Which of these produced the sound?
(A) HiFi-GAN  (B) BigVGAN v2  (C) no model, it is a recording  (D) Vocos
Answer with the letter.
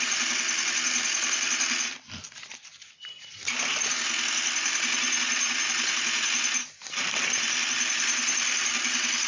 C